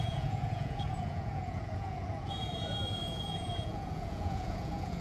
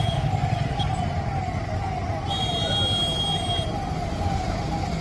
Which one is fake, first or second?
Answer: first